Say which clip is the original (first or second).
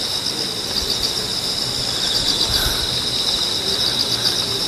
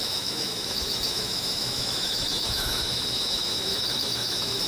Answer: first